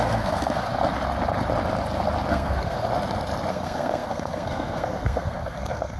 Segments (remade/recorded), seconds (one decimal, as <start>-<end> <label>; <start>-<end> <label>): 0.0-0.7 remade; 0.7-2.3 recorded; 2.3-2.9 remade; 2.9-3.5 recorded; 3.5-6.0 remade